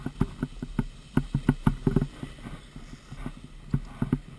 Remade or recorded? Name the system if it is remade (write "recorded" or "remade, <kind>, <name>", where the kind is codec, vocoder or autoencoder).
recorded